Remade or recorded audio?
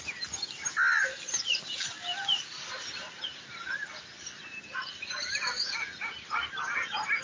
recorded